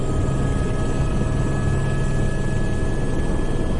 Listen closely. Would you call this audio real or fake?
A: real